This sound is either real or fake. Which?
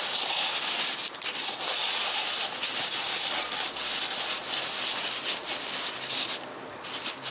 real